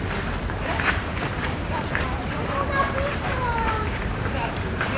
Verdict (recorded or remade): remade